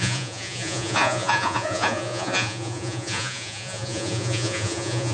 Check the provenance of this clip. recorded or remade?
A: remade